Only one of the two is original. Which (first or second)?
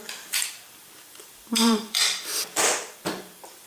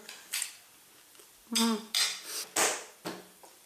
second